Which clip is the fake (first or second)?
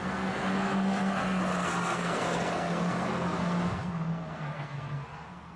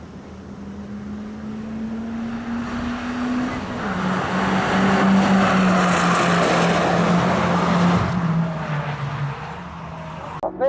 first